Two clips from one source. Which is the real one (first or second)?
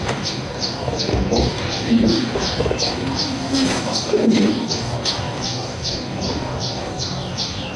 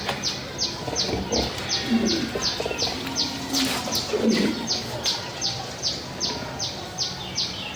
second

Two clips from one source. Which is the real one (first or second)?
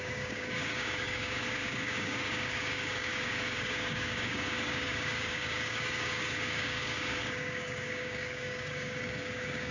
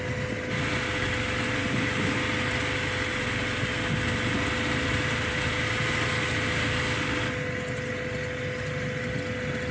second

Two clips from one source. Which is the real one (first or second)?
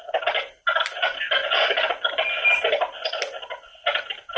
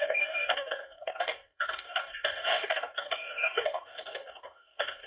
first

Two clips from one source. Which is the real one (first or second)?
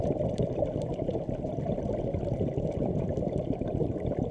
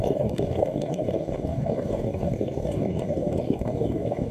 first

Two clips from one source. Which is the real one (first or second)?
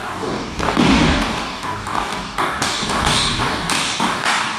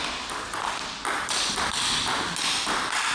second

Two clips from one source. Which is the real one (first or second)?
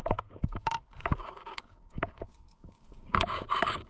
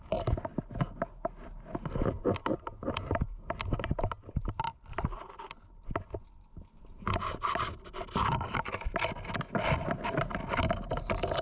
second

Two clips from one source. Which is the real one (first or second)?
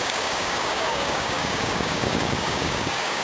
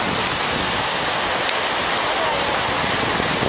second